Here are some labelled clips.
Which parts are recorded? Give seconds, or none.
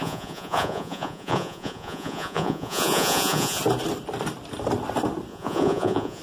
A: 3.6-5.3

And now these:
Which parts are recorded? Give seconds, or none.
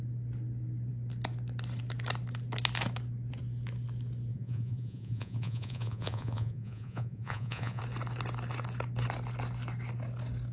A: 0.0-4.3; 7.8-10.5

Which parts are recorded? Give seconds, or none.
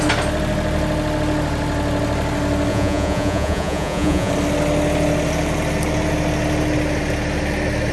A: 0.0-2.7; 4.3-7.9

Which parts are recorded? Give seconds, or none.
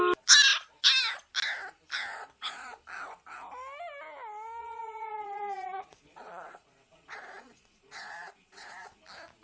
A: 0.0-2.1; 2.8-4.6; 9.0-9.4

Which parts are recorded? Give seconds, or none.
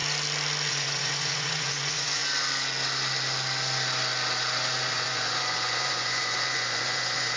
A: 0.0-0.7; 2.2-4.9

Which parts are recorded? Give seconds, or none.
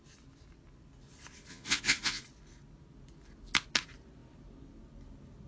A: 0.0-1.5; 2.2-5.5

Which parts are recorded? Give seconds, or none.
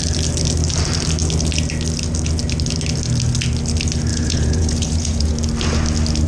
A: 0.0-4.1; 5.3-6.3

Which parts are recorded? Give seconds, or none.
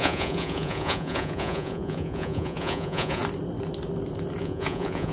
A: 3.2-4.4